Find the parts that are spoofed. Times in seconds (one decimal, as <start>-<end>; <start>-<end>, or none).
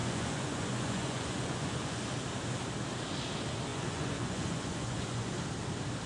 0.0-2.0; 3.7-5.3